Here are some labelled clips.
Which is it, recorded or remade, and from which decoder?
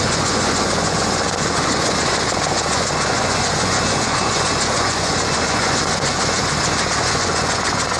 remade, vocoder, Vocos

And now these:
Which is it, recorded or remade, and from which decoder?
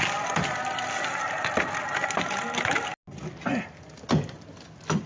recorded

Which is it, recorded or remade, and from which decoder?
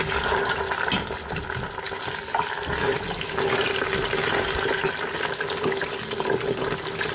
recorded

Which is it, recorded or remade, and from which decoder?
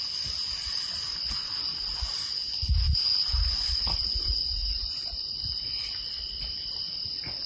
recorded